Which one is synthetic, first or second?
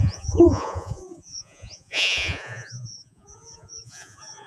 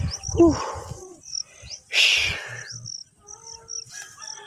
first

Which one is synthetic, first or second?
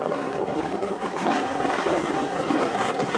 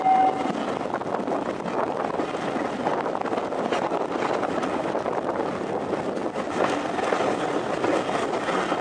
first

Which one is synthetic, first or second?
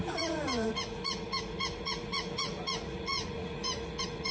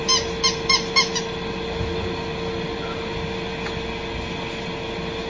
first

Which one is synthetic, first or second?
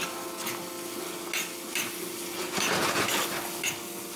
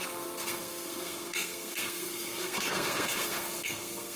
second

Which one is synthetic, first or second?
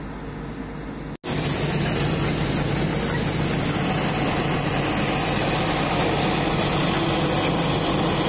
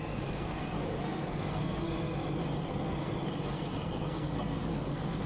second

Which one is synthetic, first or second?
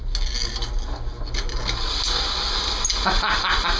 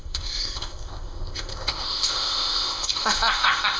second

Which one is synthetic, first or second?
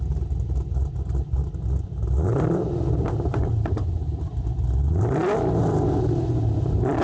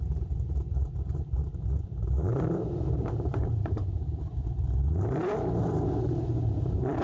second